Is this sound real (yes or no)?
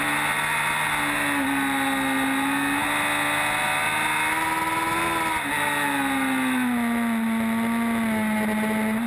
yes